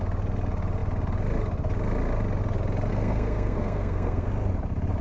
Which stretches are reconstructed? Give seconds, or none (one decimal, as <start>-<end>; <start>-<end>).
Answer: 2.9-4.3